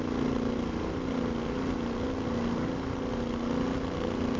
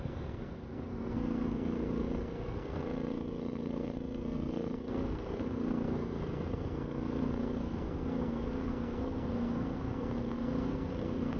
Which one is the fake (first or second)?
second